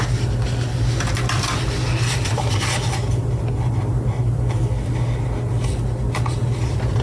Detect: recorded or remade recorded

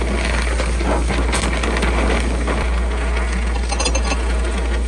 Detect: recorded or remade recorded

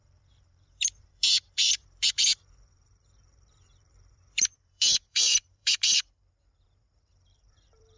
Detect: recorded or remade remade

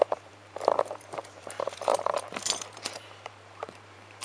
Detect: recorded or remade remade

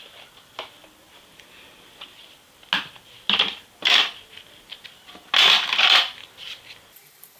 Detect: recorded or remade recorded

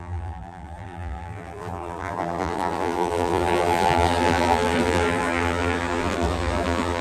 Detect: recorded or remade remade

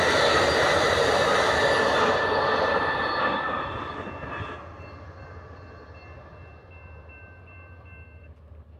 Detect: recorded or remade recorded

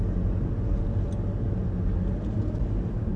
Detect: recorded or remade recorded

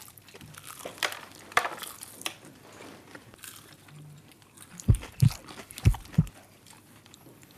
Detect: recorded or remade remade